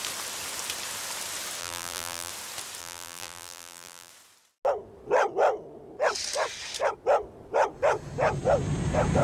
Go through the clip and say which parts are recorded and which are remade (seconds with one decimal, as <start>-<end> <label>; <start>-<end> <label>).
0.0-1.6 recorded; 1.6-2.3 remade; 2.3-2.8 recorded; 2.8-4.1 remade; 4.1-9.2 recorded